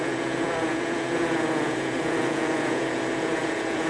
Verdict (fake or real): fake